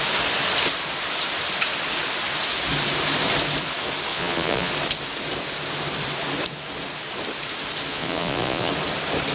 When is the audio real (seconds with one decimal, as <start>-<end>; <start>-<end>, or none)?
0.0-4.1; 4.7-7.9; 8.7-9.3